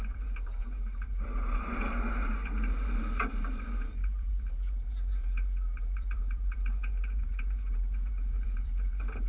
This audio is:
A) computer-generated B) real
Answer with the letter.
A